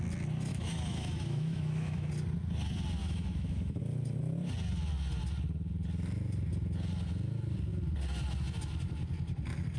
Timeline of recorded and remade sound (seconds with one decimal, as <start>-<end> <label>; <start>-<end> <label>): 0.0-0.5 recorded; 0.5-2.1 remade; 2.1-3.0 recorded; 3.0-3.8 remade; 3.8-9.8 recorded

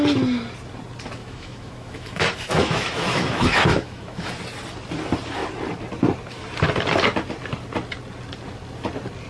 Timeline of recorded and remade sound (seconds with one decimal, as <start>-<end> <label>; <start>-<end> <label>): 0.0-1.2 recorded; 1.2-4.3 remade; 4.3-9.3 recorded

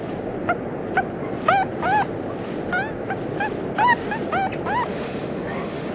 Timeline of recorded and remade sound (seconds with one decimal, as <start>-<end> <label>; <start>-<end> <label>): 0.0-4.9 recorded; 4.9-5.9 remade